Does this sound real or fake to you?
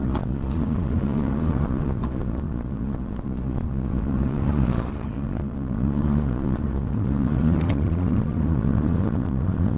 fake